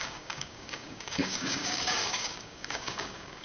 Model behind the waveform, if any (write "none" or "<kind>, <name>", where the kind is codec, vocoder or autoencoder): codec, DAC